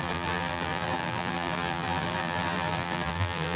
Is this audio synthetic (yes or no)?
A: yes